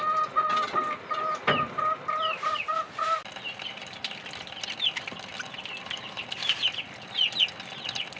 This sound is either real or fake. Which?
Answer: real